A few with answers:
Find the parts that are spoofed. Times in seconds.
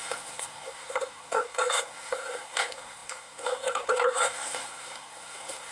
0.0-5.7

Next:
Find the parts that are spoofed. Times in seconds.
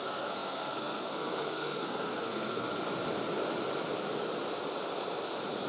0.0-2.7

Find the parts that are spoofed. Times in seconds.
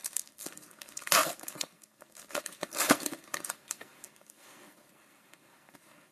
0.0-6.1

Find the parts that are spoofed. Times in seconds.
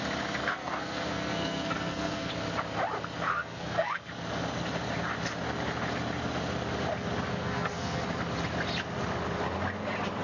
0.4-2.3; 3.3-4.1; 7.3-8.0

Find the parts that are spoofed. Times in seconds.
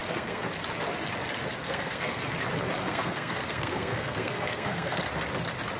0.0-0.5; 1.6-2.3; 2.8-5.0